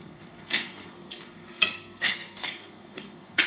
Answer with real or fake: fake